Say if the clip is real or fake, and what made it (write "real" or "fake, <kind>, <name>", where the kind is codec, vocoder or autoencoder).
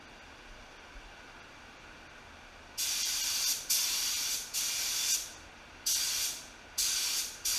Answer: real